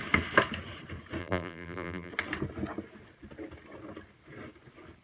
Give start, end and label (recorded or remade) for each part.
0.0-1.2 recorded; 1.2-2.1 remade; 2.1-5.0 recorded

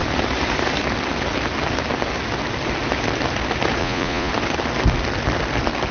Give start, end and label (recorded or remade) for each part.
0.0-3.8 recorded; 3.8-4.3 remade; 4.3-5.9 recorded

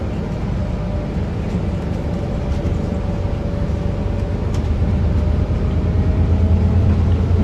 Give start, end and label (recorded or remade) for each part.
0.0-7.4 recorded

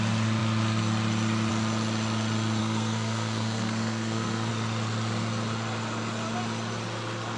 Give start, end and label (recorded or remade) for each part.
0.0-2.6 recorded; 2.6-4.5 remade; 4.5-7.4 recorded

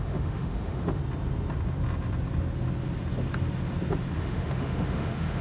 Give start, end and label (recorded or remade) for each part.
0.0-1.0 remade; 1.0-4.2 recorded; 4.2-5.4 remade

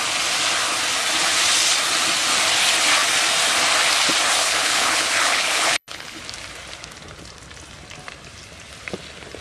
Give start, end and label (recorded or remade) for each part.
0.0-4.4 recorded; 4.4-6.2 remade; 6.2-9.4 recorded

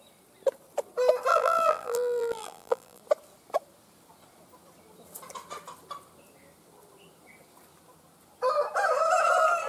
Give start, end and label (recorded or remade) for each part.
0.0-1.3 recorded; 1.3-3.0 remade; 3.0-9.7 recorded